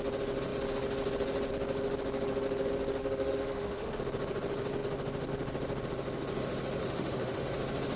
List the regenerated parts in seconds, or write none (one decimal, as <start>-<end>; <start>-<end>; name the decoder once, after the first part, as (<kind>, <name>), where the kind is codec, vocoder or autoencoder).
3.0-4.0 (autoencoder, DAC-VAE); 6.8-7.4